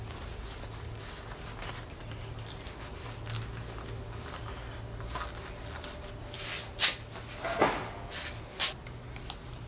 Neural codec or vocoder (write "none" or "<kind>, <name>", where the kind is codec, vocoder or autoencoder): none